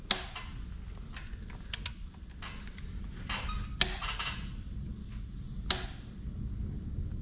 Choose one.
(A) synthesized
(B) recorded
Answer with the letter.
B